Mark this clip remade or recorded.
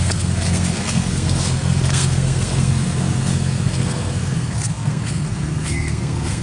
remade